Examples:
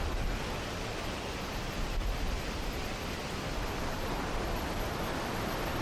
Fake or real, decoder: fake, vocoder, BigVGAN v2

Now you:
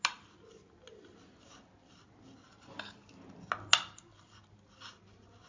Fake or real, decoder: real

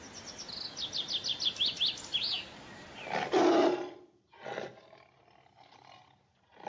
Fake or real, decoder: real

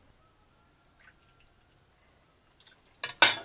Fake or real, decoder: real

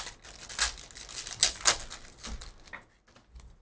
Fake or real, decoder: real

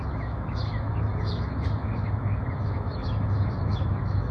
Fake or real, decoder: fake, autoencoder, DAC-VAE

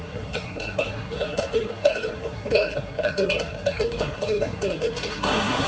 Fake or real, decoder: fake, codec, SNAC